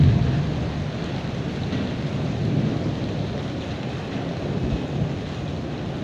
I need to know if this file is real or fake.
real